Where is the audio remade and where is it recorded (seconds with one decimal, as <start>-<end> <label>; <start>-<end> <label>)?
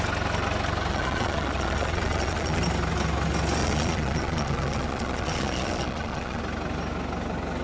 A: 0.0-0.9 recorded; 0.9-2.6 remade; 2.6-3.6 recorded; 3.6-6.4 remade; 6.4-7.6 recorded